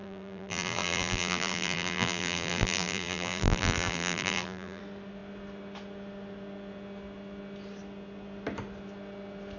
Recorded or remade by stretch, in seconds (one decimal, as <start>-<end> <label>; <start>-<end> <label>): 0.0-4.8 remade; 4.8-9.6 recorded